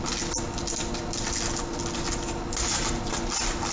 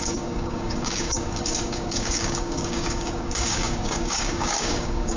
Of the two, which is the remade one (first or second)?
second